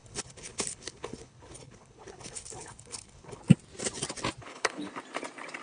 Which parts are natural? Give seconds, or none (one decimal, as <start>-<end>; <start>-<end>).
3.4-4.4; 4.9-5.6